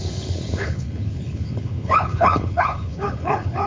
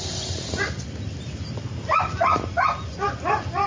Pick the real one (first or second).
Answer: second